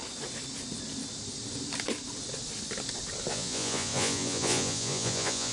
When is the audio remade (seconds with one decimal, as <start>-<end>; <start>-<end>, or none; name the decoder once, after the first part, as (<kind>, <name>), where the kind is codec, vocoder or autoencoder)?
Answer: 3.3-5.5 (vocoder, Vocos)